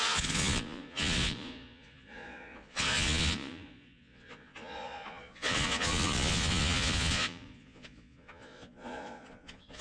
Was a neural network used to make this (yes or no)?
yes